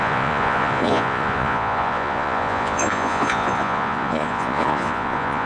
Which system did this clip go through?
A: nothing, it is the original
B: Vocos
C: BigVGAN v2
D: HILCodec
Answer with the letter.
B